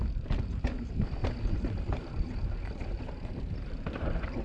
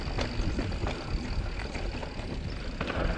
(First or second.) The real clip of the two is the second